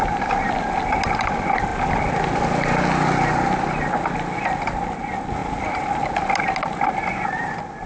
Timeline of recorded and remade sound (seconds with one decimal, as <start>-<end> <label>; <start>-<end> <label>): 0.0-7.9 recorded